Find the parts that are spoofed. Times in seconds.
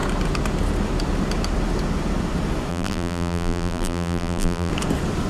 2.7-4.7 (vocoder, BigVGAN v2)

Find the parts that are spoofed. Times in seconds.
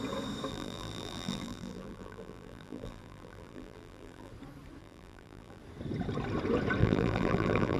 0.5-4.3 (vocoder, BigVGAN v2); 4.8-5.6; 6.8-7.8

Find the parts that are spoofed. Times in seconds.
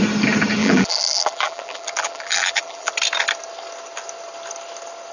0.6-2.9 (vocoder, BigVGAN v2)